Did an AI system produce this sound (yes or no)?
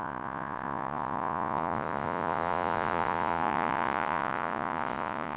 yes